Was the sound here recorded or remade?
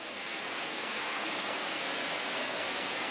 remade